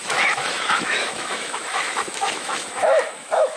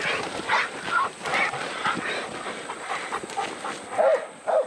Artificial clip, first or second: first